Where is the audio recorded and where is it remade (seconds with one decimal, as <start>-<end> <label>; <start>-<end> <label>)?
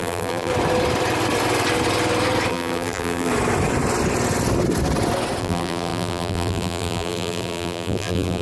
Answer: 0.0-0.5 remade; 0.5-2.5 recorded; 2.5-3.3 remade; 3.3-5.4 recorded; 5.4-8.4 remade